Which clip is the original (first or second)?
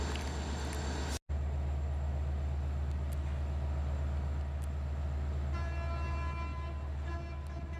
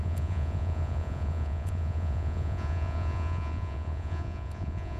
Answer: first